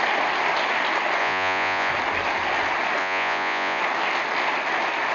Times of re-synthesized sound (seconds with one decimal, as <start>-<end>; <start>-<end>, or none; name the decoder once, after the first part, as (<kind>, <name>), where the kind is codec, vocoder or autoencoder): 1.2-1.9 (vocoder, Vocos); 3.0-3.8